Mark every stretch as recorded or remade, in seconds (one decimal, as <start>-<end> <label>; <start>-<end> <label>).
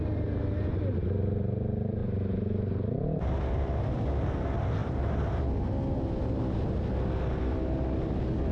0.0-4.8 recorded; 4.8-5.5 remade; 5.5-8.5 recorded